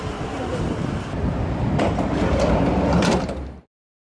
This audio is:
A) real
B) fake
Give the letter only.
A